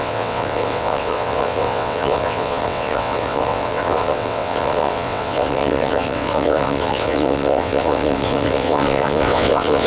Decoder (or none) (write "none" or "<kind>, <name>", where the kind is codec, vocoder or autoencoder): vocoder, WaveNeXt